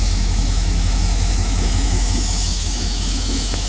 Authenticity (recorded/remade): remade